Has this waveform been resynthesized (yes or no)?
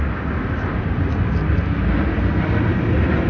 no